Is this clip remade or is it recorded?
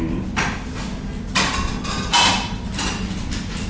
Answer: recorded